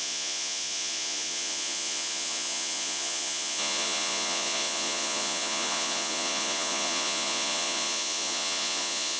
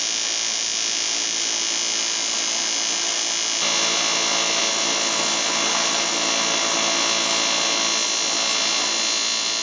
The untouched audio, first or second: second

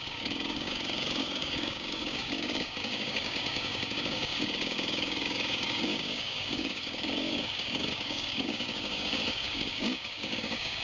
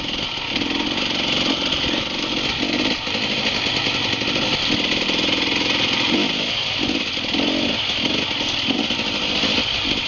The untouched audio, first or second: second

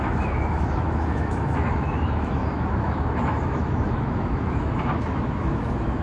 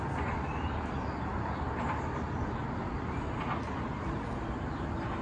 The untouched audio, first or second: second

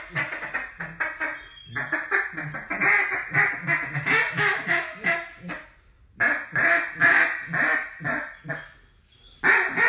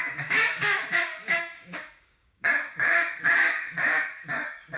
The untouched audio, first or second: first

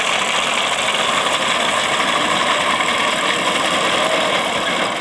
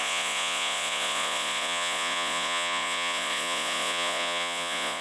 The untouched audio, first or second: first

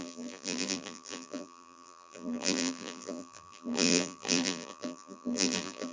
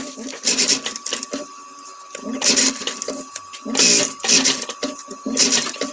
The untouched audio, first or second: second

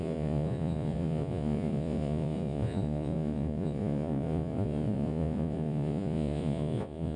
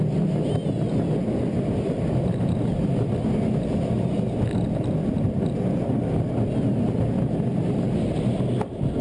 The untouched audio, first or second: second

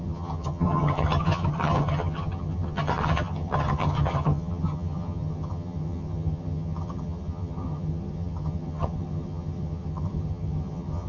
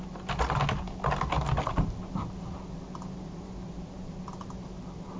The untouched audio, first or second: second